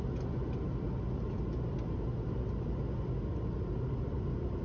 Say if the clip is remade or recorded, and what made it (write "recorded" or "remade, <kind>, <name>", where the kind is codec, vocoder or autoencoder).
recorded